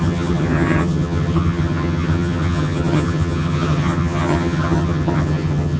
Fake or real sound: fake